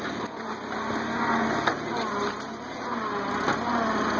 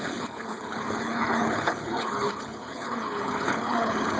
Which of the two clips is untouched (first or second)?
first